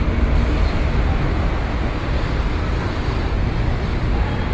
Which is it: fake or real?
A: real